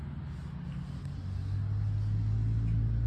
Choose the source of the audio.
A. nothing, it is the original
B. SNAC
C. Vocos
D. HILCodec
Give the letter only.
A